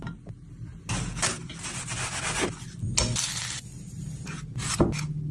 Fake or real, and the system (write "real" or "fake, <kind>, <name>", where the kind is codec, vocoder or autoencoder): real